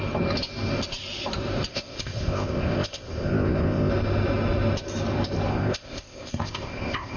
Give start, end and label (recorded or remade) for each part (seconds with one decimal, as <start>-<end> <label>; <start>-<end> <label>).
0.0-1.7 recorded; 1.7-3.9 remade; 3.9-5.5 recorded; 5.5-7.2 remade